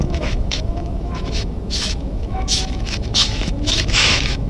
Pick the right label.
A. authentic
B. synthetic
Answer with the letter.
B